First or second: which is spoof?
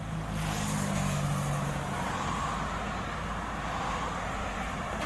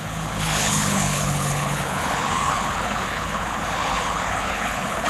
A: second